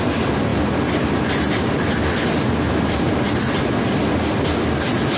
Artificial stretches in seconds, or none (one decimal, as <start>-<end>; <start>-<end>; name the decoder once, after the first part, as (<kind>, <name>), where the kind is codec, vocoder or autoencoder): none

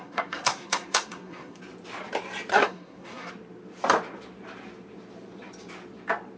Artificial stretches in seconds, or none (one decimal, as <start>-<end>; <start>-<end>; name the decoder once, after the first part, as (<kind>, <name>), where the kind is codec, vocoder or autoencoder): 0.0-1.6 (codec, SNAC); 2.5-3.3

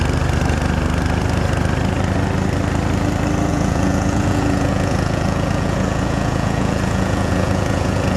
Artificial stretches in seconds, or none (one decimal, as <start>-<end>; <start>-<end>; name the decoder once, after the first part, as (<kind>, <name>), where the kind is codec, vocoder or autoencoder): 3.5-8.2 (vocoder, Vocos)

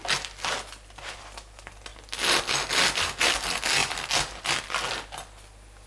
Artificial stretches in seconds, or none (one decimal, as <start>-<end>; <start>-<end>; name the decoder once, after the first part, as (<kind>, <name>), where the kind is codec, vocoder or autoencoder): none